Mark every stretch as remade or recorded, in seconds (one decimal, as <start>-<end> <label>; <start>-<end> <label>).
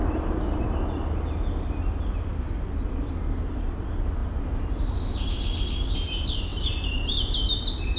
0.0-8.0 recorded